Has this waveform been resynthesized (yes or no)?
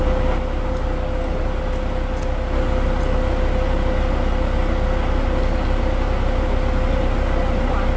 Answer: no